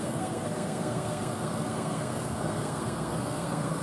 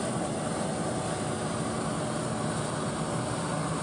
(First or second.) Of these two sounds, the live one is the second